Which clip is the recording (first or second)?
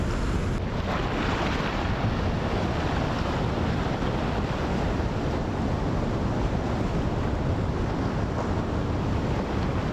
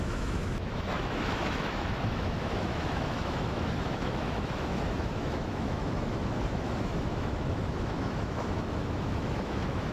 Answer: first